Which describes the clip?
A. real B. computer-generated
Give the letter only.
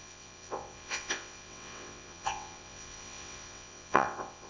B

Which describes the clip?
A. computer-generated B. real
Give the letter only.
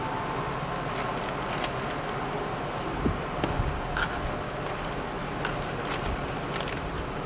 B